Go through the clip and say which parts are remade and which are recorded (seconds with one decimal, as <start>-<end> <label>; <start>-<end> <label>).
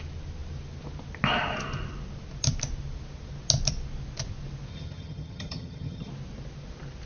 0.0-4.7 recorded; 4.7-6.1 remade; 6.1-7.1 recorded